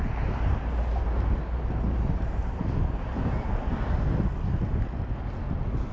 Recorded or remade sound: recorded